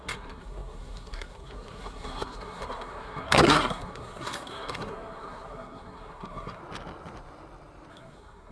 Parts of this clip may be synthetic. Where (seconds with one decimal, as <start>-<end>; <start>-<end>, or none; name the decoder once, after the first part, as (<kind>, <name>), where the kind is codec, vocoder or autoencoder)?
0.0-6.6 (codec, SNAC); 7.9-8.5